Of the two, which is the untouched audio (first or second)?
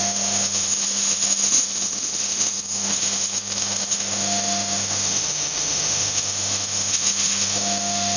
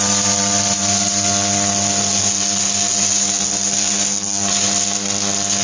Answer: second